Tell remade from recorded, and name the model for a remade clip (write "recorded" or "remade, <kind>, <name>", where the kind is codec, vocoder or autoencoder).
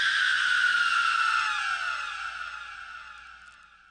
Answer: recorded